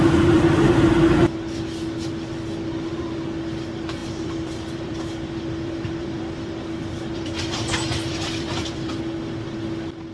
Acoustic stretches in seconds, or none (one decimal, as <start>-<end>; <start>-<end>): 0.0-4.0; 9.0-10.1

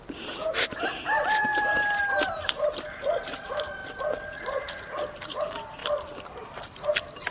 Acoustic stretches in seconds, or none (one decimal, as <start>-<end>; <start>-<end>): 3.8-5.1; 5.8-7.3

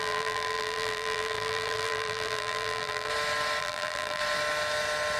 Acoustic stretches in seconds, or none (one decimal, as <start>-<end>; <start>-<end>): 3.1-3.6; 4.2-5.2

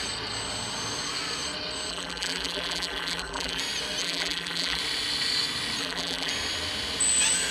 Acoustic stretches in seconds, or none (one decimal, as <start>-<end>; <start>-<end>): 0.0-1.9; 3.6-4.0; 4.8-5.8; 6.3-7.5

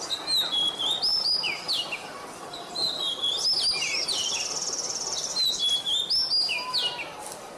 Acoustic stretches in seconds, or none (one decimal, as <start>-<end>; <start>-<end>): 0.0-1.1; 1.8-4.0; 5.7-7.6

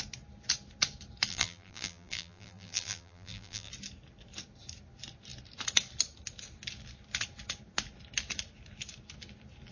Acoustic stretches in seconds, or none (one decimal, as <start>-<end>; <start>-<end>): 0.0-1.3; 3.7-9.7

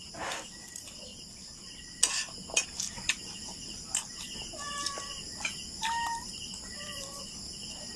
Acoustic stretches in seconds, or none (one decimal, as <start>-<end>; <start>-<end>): 0.0-8.0

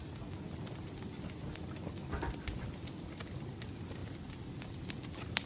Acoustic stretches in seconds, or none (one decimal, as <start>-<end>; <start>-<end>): 0.0-5.5